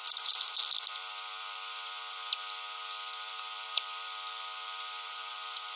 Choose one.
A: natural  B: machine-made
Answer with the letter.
A